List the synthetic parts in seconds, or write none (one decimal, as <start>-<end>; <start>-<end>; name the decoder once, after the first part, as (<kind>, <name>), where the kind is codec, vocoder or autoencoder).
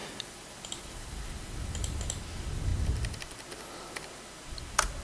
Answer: none